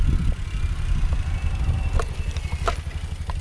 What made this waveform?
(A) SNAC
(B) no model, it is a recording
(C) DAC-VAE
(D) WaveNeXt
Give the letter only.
B